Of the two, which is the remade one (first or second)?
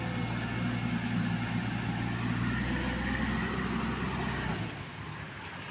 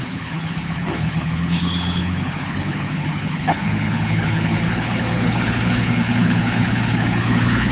second